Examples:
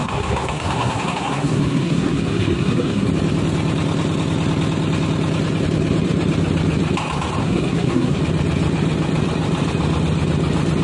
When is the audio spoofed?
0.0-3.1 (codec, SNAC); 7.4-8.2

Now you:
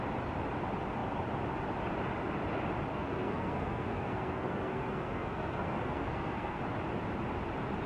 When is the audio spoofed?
2.9-6.6 (codec, SNAC)

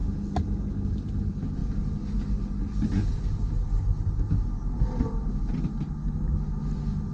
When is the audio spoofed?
none

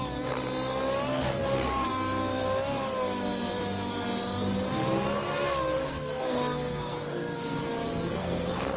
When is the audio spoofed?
5.8-7.6 (codec, SNAC); 8.2-8.8

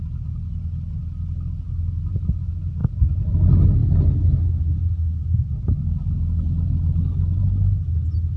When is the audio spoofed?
none

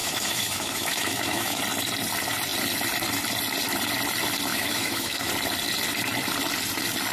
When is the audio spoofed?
0.0-1.6 (autoencoder, DAC-VAE); 4.5-5.3

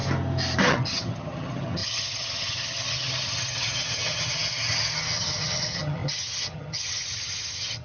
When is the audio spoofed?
0.7-7.8 (vocoder, HiFi-GAN)

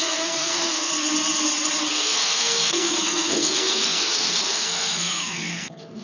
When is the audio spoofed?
0.0-0.9 (codec, SNAC); 1.9-6.0